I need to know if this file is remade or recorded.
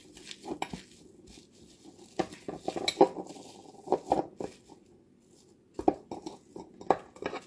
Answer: recorded